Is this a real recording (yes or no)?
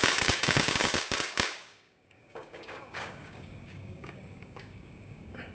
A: no